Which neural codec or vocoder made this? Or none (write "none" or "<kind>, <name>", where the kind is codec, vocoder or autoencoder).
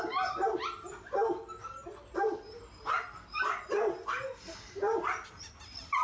none